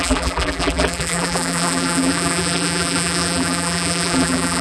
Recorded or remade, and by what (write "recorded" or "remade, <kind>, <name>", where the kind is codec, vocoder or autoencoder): remade, vocoder, BigVGAN v2